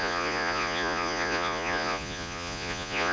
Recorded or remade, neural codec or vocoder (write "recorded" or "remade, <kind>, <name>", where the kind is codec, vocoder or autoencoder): remade, vocoder, Vocos